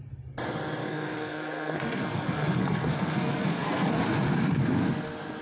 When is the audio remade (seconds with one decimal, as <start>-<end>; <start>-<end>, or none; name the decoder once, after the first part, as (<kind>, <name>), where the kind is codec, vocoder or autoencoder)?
0.8-3.9 (codec, SNAC)

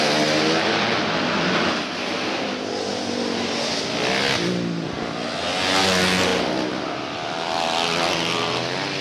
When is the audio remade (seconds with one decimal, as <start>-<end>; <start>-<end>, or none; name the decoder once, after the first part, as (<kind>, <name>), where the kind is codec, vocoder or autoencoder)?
none

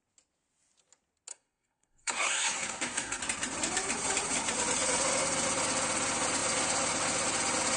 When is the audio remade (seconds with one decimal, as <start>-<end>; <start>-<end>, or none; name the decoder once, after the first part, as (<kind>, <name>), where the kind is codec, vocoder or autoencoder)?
1.3-3.2 (codec, SNAC)

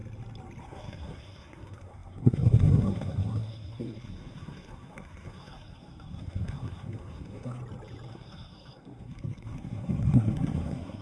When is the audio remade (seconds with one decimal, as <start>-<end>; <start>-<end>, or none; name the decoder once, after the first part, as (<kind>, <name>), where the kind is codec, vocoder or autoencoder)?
0.6-7.6 (codec, SNAC); 8.1-11.0

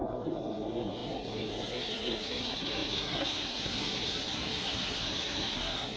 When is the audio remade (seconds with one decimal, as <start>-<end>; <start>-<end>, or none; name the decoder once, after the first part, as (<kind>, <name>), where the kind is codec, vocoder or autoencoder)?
0.0-6.0 (codec, SNAC)

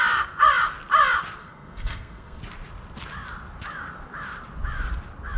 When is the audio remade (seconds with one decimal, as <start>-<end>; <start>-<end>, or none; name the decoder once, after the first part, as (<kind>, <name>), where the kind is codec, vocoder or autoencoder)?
1.4-2.4 (codec, SNAC)